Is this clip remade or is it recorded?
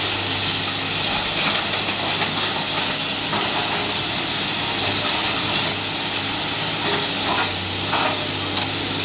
recorded